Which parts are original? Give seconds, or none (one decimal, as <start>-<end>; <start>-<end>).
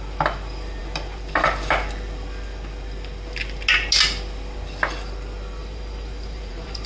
0.0-5.6